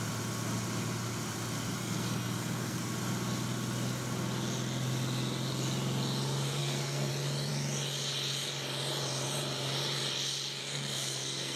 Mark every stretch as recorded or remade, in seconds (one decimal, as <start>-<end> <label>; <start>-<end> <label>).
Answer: 0.0-1.8 recorded; 1.8-2.8 remade; 2.8-6.6 recorded; 6.6-7.1 remade; 7.1-10.6 recorded; 10.6-11.6 remade